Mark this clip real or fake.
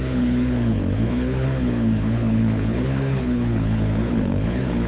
fake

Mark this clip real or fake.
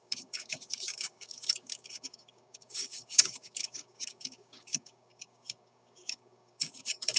fake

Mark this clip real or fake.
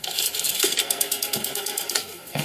fake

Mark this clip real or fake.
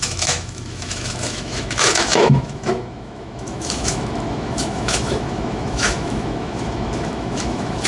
fake